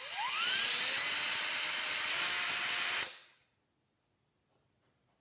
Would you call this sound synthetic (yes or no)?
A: no